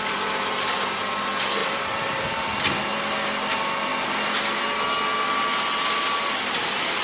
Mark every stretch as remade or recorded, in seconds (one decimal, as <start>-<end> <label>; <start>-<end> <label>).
0.0-1.6 recorded; 1.6-2.6 remade; 2.6-7.0 recorded